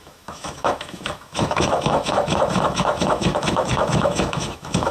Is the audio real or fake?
fake